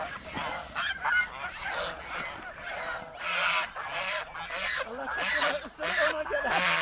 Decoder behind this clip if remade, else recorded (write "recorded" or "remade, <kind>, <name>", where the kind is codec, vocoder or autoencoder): recorded